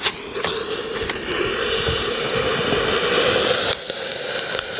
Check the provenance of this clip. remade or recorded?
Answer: recorded